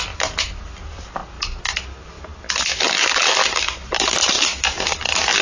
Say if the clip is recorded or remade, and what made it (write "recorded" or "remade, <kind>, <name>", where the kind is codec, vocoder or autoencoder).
recorded